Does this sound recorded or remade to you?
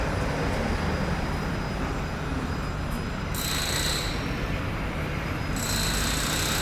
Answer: recorded